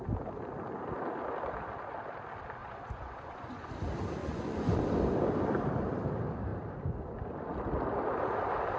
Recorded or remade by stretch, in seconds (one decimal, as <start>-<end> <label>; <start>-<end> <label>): 0.0-2.6 recorded; 2.6-3.7 remade; 3.7-4.2 recorded; 4.2-4.8 remade; 4.8-8.8 recorded